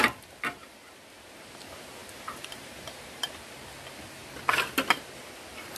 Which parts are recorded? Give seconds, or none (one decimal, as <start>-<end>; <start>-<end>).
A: 0.0-2.0; 3.4-5.8